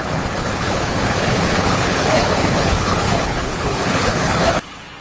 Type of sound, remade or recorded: remade